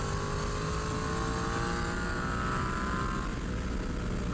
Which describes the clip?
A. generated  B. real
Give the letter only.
B